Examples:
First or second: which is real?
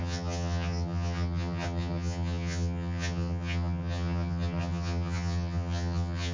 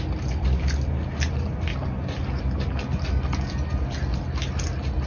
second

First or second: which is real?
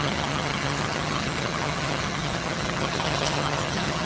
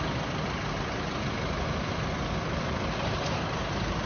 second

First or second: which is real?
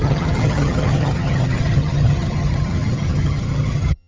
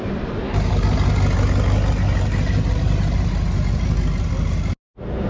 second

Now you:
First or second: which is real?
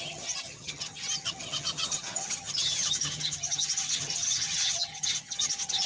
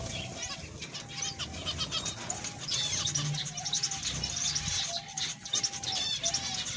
second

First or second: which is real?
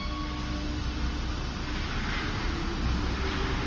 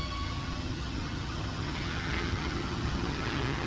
first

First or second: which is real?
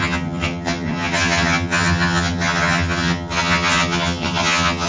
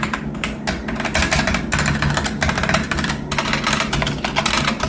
second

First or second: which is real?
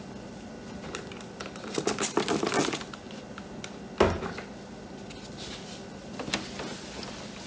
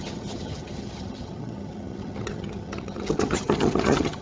first